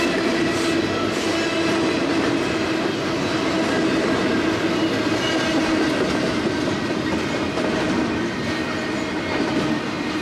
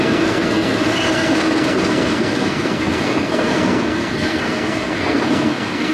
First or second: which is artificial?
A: second